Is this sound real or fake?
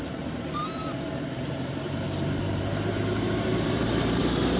fake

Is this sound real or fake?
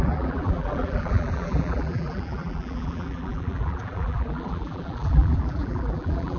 fake